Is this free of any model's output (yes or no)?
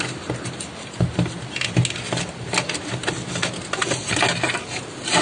yes